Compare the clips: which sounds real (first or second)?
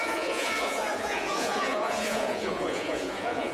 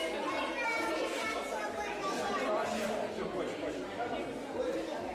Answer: second